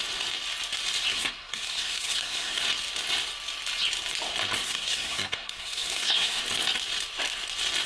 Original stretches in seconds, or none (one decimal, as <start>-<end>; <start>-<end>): 0.0-1.1; 2.6-4.6; 6.4-7.9